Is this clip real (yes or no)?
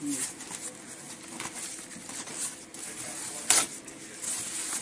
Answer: yes